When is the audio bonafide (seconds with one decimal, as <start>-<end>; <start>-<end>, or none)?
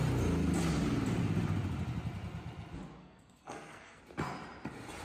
0.0-3.0; 4.0-5.0